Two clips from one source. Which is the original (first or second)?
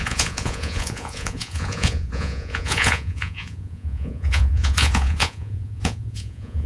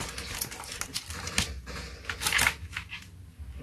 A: second